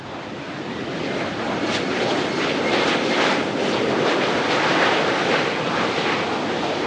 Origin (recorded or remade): recorded